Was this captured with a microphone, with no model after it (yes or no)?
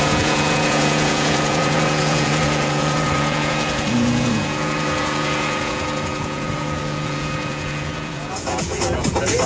no